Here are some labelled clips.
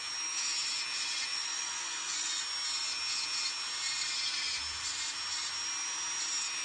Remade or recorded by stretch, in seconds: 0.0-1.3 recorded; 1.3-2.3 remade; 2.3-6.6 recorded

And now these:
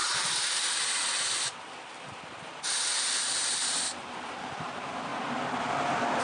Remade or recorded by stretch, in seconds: 0.0-3.7 recorded; 3.7-5.1 remade; 5.1-6.2 recorded

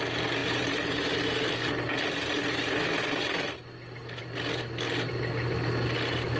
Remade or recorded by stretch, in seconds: 0.0-6.4 recorded

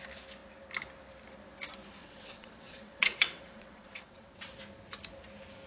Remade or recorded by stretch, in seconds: 0.0-2.0 recorded; 2.0-4.6 remade; 4.6-5.7 recorded